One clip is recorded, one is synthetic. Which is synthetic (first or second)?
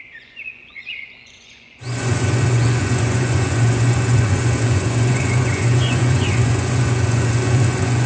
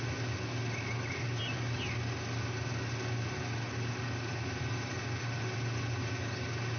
first